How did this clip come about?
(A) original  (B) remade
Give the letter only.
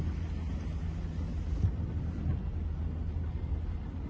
A